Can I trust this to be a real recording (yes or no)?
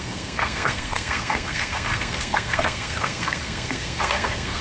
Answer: no